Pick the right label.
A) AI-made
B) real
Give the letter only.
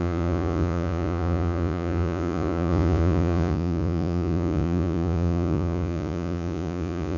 A